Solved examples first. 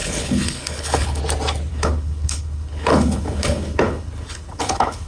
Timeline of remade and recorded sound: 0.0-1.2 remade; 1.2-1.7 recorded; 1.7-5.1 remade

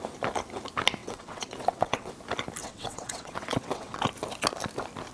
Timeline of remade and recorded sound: 0.0-1.0 recorded; 1.0-2.1 remade; 2.1-2.6 recorded; 2.6-4.0 remade; 4.0-5.1 recorded

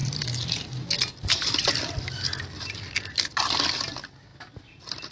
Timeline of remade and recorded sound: 0.0-5.1 recorded